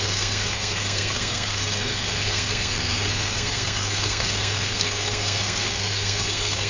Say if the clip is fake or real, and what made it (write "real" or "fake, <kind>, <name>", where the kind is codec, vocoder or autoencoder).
fake, codec, SNAC